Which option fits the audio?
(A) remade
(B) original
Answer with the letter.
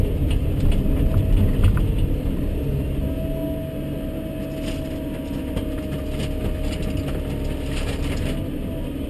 B